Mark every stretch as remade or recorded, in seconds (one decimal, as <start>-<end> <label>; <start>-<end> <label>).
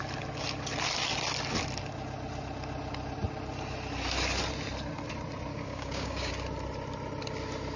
0.0-5.5 recorded; 5.5-6.3 remade; 6.3-7.8 recorded